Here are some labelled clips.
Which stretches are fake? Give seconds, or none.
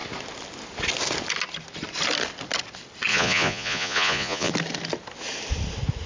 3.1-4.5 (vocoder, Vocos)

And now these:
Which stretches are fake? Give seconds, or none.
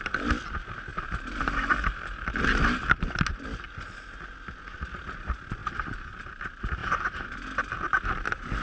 none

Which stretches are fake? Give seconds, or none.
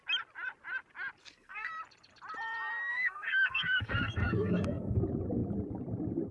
1.2-1.7 (codec, SNAC); 2.9-5.0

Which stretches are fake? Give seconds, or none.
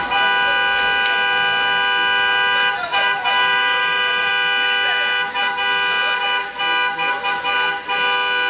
2.9-4.3 (vocoder, BigVGAN v2)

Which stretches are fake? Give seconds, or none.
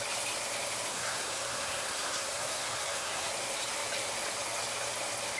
0.9-3.3 (codec, SNAC)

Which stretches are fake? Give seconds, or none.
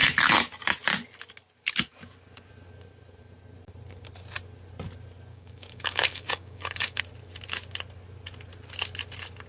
5.3-7.0 (codec, DAC)